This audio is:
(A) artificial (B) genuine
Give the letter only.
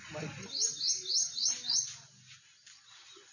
B